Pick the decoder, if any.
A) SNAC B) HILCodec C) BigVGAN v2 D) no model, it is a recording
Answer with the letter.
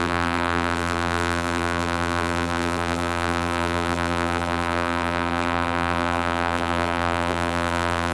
C